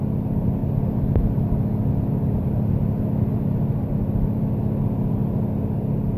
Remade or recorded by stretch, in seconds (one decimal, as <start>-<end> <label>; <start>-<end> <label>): 0.0-6.2 recorded